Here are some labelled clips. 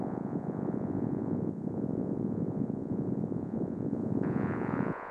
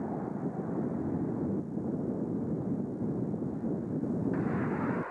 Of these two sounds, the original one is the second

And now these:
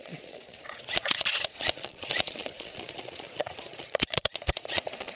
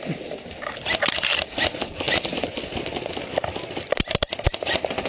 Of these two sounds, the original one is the second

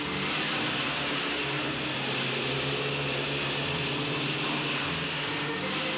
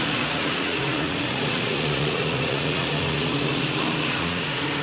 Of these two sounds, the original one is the first